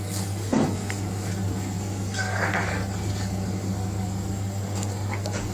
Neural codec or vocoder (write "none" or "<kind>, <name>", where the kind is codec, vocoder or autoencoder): codec, SNAC